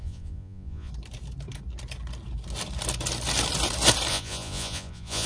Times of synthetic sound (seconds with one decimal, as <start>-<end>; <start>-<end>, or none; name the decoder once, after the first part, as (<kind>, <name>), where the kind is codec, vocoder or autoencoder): 0.0-0.9 (vocoder, Vocos); 4.1-5.3